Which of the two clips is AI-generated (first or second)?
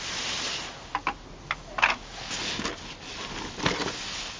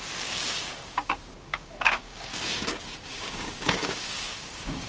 second